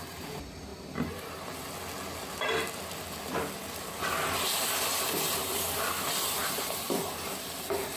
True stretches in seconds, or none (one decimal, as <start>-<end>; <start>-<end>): 0.0-8.0